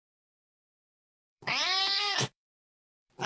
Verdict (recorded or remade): remade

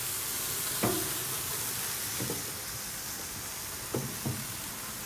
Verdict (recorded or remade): recorded